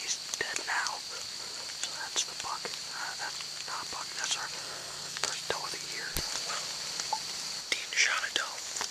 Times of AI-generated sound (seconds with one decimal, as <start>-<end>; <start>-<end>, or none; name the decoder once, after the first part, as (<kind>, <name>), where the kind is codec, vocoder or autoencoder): 4.6-5.3 (codec, SNAC)